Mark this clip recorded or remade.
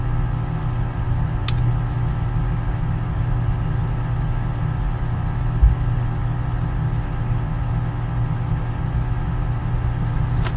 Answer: recorded